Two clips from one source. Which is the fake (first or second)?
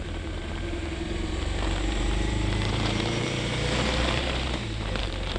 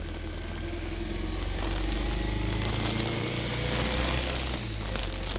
first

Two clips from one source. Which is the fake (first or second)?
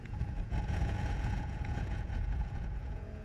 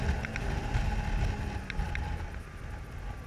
first